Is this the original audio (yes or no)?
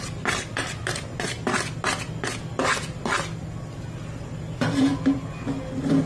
yes